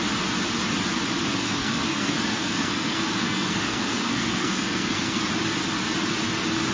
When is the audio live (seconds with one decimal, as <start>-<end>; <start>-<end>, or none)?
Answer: 0.0-1.3; 5.3-6.7